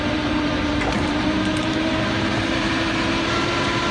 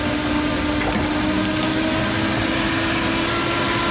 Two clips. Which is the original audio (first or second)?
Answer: second